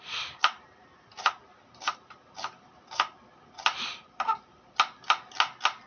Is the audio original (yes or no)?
yes